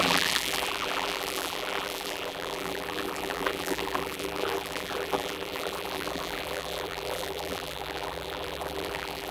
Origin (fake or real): fake